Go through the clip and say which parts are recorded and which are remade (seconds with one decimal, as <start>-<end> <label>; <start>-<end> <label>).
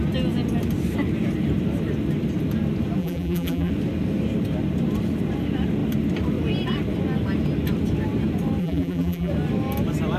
0.0-3.0 recorded; 3.0-3.7 remade; 3.7-8.6 recorded; 8.6-9.3 remade; 9.3-10.2 recorded